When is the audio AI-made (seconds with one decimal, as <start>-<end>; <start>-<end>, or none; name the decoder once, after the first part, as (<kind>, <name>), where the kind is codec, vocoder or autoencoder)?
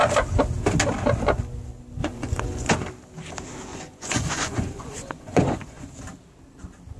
2.0-2.7 (vocoder, Vocos); 3.7-5.9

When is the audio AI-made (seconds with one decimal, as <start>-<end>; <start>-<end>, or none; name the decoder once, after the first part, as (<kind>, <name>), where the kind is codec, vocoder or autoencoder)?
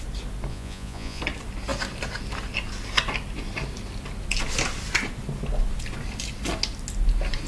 0.5-1.2 (vocoder, Vocos)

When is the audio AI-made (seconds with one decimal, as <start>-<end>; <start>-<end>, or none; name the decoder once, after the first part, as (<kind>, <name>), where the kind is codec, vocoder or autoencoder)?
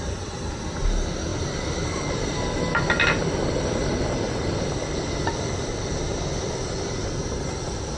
none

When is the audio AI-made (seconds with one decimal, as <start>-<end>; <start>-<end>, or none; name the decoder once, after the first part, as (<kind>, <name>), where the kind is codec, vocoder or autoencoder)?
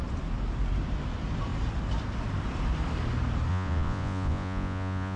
3.5-5.2 (vocoder, Vocos)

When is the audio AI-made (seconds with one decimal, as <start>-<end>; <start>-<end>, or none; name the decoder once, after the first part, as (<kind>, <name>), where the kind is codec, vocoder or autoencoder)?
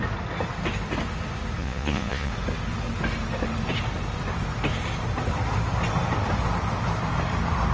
1.6-2.3 (vocoder, Vocos)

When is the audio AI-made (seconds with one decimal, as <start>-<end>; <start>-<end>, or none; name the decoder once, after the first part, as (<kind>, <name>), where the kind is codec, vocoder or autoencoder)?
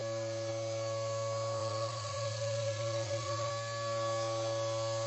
1.6-3.5 (vocoder, Vocos)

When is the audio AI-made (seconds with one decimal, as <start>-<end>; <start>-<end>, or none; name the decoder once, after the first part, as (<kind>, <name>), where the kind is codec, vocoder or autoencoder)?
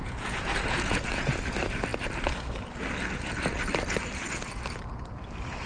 0.0-1.4 (vocoder, Vocos)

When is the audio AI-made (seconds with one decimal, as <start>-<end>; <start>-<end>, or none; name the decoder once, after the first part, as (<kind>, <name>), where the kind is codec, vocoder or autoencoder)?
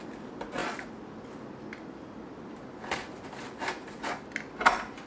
none